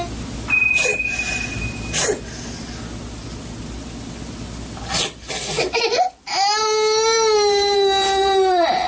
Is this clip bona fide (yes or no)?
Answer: yes